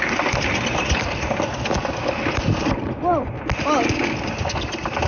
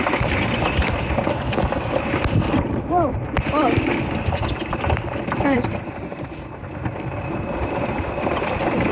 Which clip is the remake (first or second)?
second